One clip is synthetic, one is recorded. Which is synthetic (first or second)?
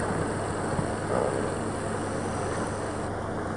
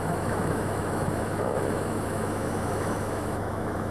second